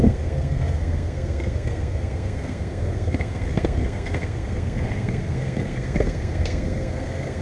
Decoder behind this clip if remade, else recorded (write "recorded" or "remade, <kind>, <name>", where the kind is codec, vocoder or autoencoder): remade, codec, SNAC